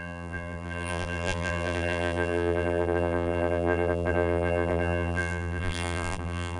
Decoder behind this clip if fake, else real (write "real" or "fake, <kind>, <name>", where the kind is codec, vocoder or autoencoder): fake, vocoder, BigVGAN v2